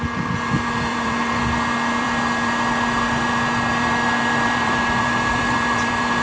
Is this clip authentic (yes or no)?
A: no